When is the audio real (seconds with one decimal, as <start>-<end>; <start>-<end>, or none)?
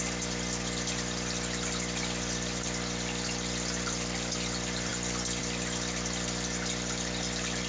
0.0-7.7